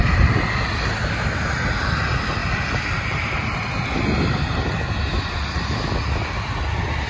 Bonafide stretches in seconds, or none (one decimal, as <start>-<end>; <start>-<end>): 0.0-7.1